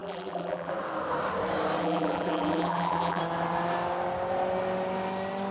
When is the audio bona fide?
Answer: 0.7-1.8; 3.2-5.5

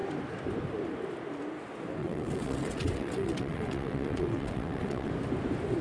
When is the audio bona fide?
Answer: 0.0-2.0; 5.1-5.8

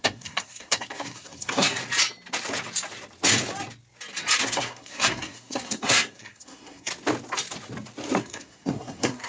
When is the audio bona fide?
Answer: 1.8-4.4; 6.9-8.2

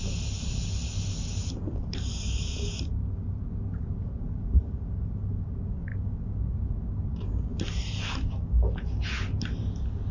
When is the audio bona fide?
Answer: 0.0-10.1

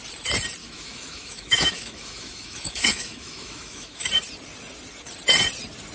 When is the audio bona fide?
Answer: 0.0-0.6; 4.1-5.9

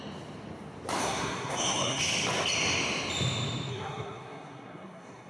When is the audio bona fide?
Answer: 0.0-1.0; 2.0-3.7

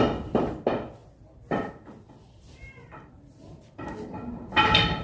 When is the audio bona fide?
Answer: 0.0-5.0